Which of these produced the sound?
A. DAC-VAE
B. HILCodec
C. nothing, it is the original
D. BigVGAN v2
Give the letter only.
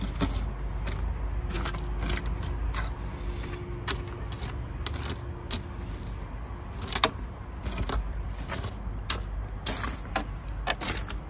C